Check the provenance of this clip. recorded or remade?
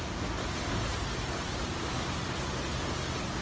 recorded